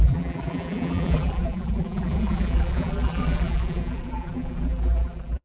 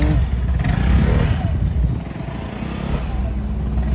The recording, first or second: second